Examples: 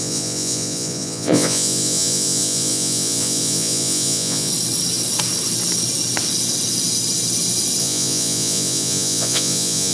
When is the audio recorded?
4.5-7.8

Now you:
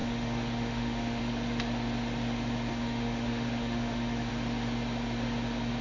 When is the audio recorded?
1.2-2.7; 4.3-5.8